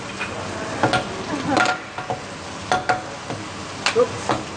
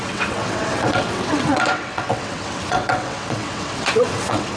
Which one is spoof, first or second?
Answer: second